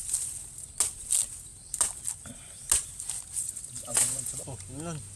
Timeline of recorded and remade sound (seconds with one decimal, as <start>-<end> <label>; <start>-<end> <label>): 0.0-3.9 recorded; 3.9-4.4 remade; 4.4-5.2 recorded